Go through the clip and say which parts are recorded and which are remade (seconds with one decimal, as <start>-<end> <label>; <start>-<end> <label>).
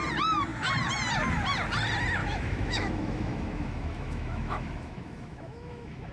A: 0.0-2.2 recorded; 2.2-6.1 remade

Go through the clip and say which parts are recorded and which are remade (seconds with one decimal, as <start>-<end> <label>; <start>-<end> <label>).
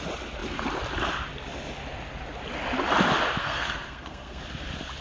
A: 0.0-3.4 recorded; 3.4-4.4 remade; 4.4-5.0 recorded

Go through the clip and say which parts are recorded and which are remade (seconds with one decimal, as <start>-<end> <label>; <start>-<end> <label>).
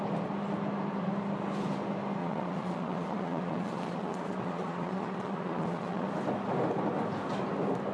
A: 0.0-2.2 recorded; 2.2-6.1 remade; 6.1-7.9 recorded